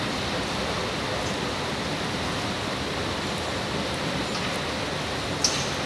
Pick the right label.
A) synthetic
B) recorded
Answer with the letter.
B